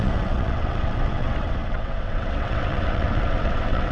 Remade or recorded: remade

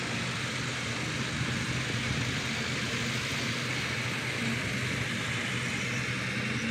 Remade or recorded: recorded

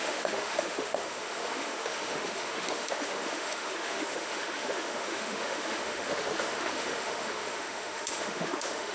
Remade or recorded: remade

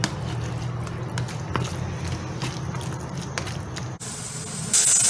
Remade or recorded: recorded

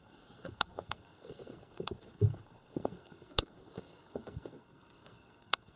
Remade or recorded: remade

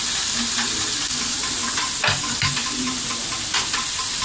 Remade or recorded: recorded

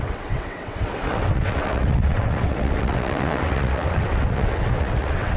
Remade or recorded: remade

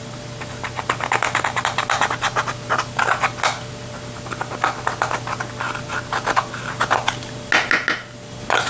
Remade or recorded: recorded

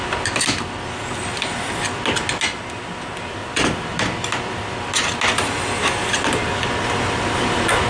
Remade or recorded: recorded